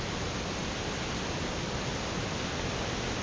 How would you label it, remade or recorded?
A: recorded